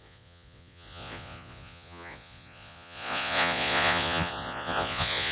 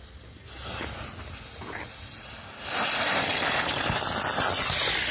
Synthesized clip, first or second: first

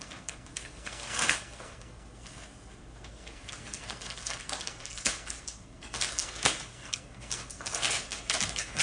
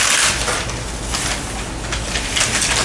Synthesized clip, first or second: first